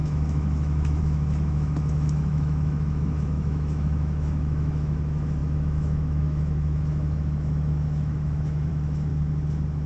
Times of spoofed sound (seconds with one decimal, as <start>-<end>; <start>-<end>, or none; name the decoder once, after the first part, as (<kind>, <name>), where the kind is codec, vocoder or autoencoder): 0.0-9.1 (autoencoder, DAC-VAE)